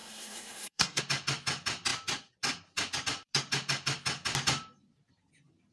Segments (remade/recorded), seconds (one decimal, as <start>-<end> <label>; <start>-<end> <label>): 0.0-1.0 remade; 1.0-5.7 recorded